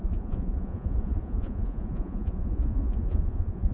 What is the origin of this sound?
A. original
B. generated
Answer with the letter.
B